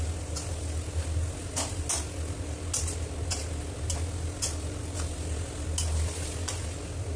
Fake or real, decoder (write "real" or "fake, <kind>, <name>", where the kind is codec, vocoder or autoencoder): real